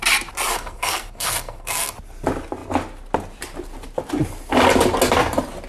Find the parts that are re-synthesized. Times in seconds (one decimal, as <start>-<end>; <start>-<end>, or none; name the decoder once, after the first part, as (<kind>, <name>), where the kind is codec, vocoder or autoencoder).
0.5-1.9 (codec, SNAC)

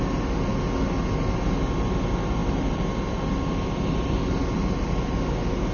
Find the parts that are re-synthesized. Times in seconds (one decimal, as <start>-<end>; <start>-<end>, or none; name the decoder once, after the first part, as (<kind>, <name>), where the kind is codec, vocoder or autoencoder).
2.4-5.2 (vocoder, BigVGAN v2)

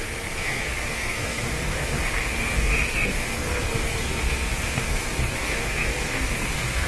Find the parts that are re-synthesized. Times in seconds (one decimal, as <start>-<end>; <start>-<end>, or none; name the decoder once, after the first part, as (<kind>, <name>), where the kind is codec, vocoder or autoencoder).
0.0-6.9 (codec, SNAC)

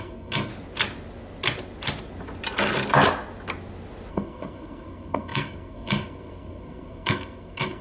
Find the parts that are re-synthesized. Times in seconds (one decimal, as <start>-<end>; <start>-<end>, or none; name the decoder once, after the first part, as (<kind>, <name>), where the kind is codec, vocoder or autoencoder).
0.0-0.5 (codec, SNAC); 4.1-7.8

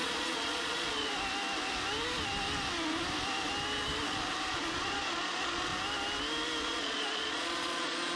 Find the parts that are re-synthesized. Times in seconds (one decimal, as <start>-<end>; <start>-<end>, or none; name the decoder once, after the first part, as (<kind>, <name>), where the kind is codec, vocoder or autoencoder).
0.0-1.1 (vocoder, Vocos); 4.5-5.7; 6.6-8.2

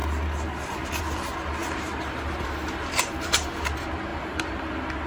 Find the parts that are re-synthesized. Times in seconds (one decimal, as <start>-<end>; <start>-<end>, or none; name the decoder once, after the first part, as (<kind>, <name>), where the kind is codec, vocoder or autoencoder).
1.6-3.5 (vocoder, BigVGAN v2); 4.1-4.6

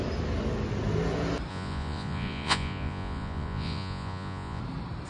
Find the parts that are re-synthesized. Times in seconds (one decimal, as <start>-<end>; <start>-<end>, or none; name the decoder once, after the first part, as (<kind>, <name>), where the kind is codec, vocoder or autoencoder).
1.5-4.6 (vocoder, Vocos)